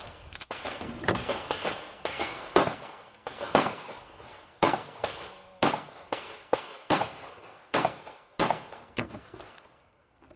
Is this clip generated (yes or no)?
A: yes